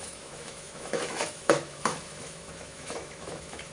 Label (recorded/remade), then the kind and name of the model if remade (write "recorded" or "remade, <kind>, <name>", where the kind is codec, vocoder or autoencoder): remade, autoencoder, DAC-VAE